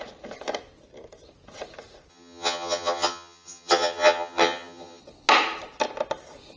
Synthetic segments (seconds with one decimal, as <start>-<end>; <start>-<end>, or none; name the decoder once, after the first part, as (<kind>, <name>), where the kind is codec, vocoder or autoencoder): 2.1-5.0 (vocoder, HiFi-GAN)